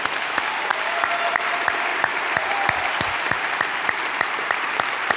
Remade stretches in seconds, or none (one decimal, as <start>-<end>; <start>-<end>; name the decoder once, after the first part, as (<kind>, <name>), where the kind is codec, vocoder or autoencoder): 1.9-5.2 (vocoder, BigVGAN v2)

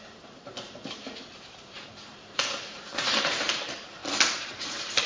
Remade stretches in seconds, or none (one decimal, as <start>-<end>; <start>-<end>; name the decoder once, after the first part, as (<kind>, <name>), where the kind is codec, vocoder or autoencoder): 0.0-4.0 (vocoder, BigVGAN v2); 4.6-5.1